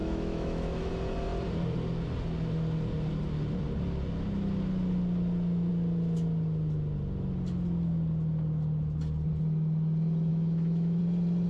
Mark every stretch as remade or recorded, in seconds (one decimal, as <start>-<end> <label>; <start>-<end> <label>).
0.0-0.9 remade; 0.9-10.3 recorded; 10.3-11.0 remade; 11.0-11.5 recorded